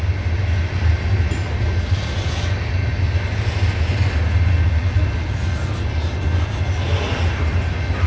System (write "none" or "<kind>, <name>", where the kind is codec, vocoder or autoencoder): none